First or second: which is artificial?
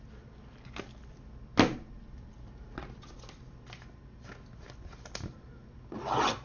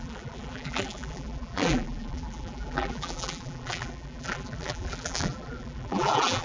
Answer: second